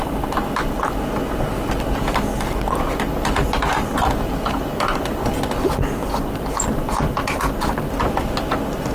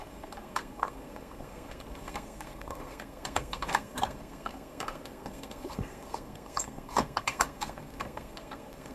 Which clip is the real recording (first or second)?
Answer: first